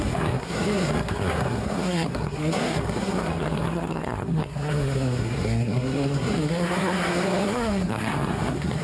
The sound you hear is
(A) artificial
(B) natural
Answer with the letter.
A